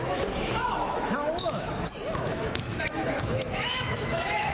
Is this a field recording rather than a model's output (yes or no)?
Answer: no